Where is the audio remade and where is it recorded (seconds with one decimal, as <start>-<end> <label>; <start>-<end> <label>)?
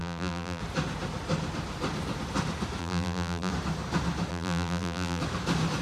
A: 0.0-0.6 remade; 0.6-2.8 recorded; 2.8-3.5 remade; 3.5-4.3 recorded; 4.3-5.2 remade; 5.2-5.8 recorded